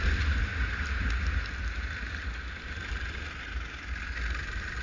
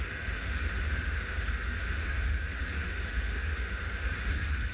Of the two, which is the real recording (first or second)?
first